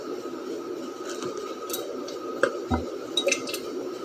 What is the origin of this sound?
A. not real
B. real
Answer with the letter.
B